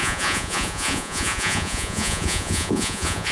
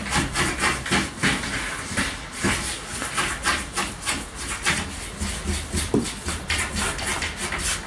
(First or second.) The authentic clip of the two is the second